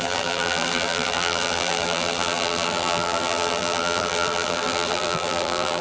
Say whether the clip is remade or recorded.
remade